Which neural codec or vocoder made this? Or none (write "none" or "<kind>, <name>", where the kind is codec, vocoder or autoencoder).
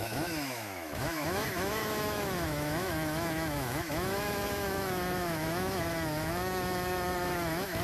autoencoder, DAC-VAE